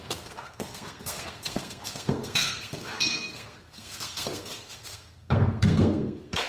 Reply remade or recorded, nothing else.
remade